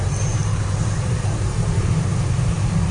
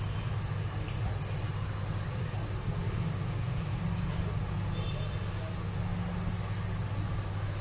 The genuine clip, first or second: second